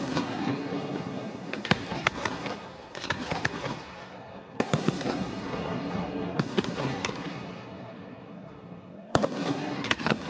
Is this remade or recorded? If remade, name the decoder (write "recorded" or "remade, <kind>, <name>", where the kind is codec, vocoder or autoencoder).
remade, codec, SNAC